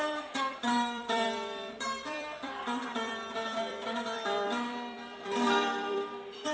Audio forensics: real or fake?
fake